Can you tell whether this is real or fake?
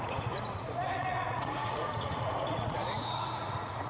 fake